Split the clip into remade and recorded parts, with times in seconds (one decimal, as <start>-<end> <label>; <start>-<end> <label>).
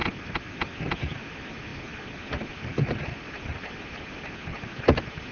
0.0-5.3 recorded